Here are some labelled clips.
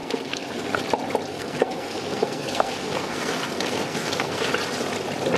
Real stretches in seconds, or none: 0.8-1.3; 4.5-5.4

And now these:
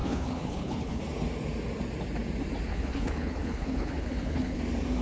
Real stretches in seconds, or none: 1.0-2.7; 4.6-5.0

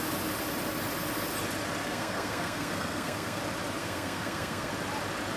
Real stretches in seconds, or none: 0.0-1.8; 3.4-3.8; 4.7-5.4

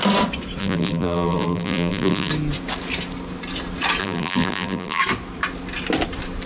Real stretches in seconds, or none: 0.0-0.6; 2.3-4.0; 5.0-6.5